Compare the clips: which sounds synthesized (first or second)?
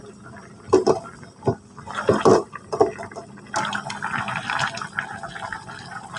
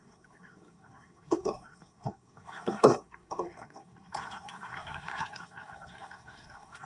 second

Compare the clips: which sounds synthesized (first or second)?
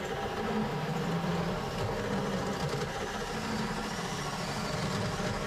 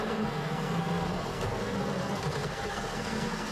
second